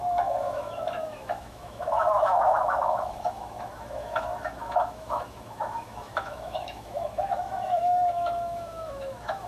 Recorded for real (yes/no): no